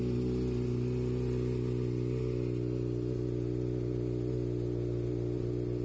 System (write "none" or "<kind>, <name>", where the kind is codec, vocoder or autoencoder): none